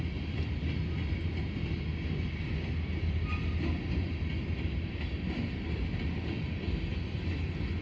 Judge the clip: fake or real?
real